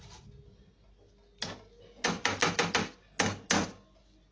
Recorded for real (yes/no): yes